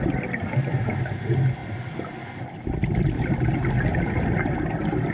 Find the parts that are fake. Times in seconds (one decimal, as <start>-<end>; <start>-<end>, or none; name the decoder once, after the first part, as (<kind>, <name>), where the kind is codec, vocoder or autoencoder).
none